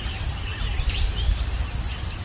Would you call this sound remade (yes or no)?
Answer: no